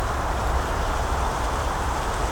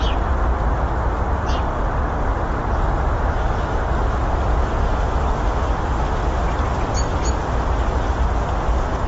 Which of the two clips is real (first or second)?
second